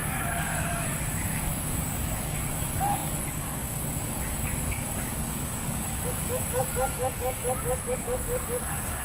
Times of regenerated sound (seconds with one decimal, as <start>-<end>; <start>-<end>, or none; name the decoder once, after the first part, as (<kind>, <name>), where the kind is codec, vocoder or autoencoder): 0.0-9.0 (codec, DAC)